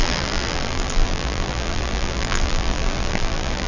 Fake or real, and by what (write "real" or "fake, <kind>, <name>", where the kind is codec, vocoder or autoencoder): fake, vocoder, BigVGAN v2